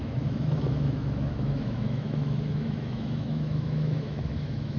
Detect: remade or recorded remade